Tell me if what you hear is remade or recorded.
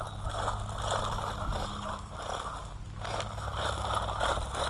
recorded